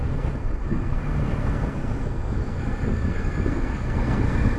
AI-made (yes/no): yes